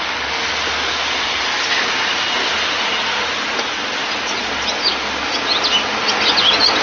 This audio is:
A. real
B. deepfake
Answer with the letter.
A